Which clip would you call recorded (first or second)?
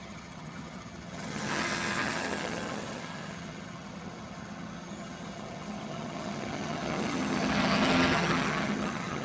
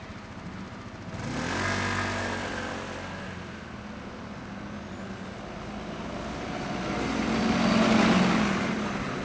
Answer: second